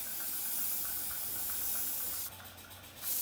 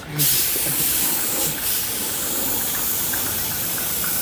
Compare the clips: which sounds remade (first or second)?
second